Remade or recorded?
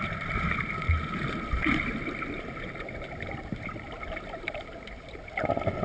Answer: recorded